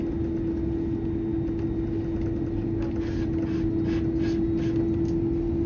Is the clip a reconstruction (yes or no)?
no